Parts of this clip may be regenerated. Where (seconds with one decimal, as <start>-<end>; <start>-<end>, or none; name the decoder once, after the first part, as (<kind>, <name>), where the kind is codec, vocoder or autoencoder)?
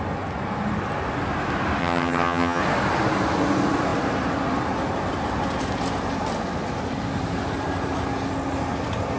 1.8-2.6 (vocoder, HiFi-GAN)